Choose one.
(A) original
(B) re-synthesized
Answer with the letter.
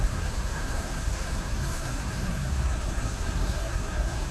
B